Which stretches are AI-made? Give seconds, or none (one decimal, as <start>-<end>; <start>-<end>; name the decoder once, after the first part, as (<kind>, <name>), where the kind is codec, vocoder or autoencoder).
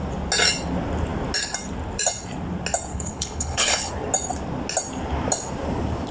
2.9-3.9 (codec, HILCodec)